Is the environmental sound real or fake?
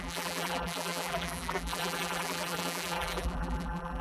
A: fake